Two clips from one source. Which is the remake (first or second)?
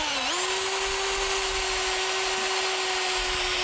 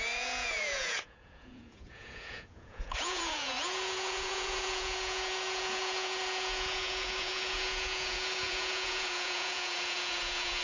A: second